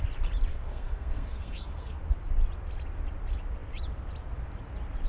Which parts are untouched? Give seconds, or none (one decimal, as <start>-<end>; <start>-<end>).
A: 0.0-0.5; 2.0-5.1

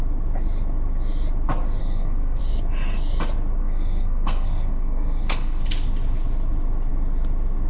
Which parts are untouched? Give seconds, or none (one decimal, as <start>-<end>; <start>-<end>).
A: 0.0-1.8; 2.4-3.6; 5.6-7.7